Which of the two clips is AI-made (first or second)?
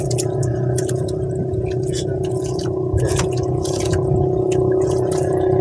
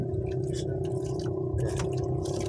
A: first